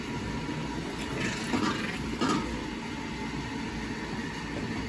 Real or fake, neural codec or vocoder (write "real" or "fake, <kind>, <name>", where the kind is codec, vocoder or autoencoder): real